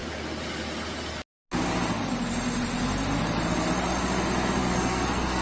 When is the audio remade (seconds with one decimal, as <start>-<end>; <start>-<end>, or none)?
4.6-5.4